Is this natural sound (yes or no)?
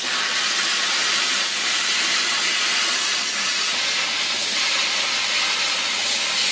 yes